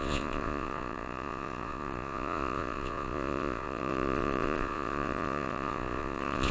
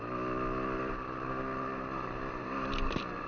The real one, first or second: second